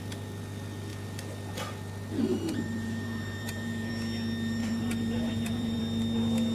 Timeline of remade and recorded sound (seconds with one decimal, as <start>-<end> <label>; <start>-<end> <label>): 0.0-2.3 recorded; 2.3-3.9 remade; 3.9-4.6 recorded; 4.6-5.8 remade; 5.8-6.5 recorded